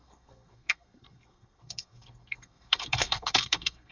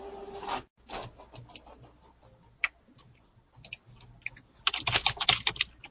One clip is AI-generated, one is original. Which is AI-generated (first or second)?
first